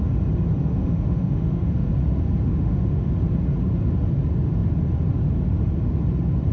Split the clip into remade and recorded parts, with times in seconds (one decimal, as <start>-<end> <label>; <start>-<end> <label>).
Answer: 0.0-0.7 recorded; 0.7-1.9 remade; 1.9-2.5 recorded; 2.5-3.1 remade; 3.1-6.5 recorded